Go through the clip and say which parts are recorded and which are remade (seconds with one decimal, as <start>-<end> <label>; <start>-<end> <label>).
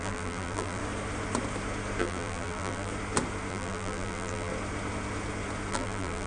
0.0-0.8 remade; 0.8-2.0 recorded; 2.0-2.9 remade; 2.9-3.5 recorded; 3.5-4.5 remade; 4.5-5.7 recorded; 5.7-6.3 remade